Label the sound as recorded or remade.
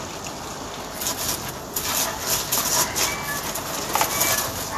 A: recorded